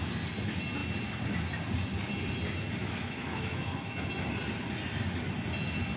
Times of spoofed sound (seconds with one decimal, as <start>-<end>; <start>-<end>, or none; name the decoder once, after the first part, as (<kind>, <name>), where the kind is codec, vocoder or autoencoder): 2.8-4.1 (autoencoder, DAC-VAE)